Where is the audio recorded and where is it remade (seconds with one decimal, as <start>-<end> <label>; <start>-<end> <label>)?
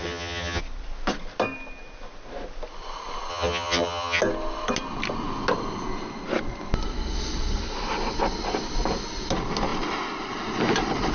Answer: 0.0-0.6 remade; 0.6-3.3 recorded; 3.3-4.2 remade; 4.2-11.1 recorded